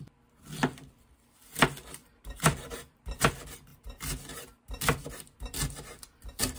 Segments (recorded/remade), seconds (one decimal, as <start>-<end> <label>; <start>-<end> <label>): 0.0-2.0 recorded; 2.0-3.3 remade; 3.3-6.6 recorded